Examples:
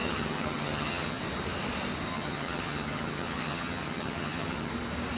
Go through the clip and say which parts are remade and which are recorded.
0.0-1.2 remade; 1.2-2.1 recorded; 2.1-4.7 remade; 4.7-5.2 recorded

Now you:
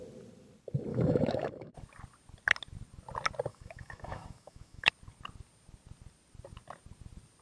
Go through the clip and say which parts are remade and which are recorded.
0.0-0.9 recorded; 0.9-1.7 remade; 1.7-3.5 recorded; 3.5-4.9 remade; 4.9-7.4 recorded

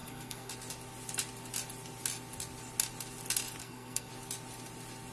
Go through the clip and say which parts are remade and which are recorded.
0.0-0.5 remade; 0.5-3.6 recorded; 3.6-4.1 remade; 4.1-5.1 recorded

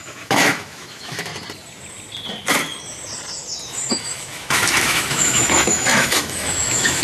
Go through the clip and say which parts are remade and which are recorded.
0.0-1.3 remade; 1.3-3.9 recorded; 3.9-7.0 remade

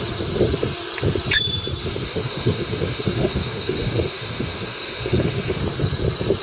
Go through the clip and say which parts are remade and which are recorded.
0.0-1.8 recorded; 1.8-5.6 remade; 5.6-6.4 recorded

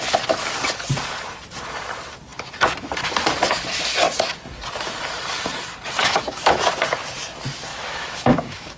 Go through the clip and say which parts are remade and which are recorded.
0.0-6.0 recorded; 6.0-6.7 remade; 6.7-7.7 recorded; 7.7-8.8 remade

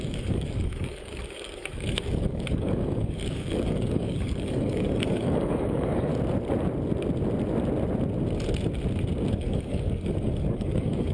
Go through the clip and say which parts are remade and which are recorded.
0.0-6.1 remade; 6.1-9.3 recorded; 9.3-11.1 remade